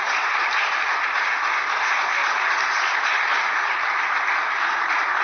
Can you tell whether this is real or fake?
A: real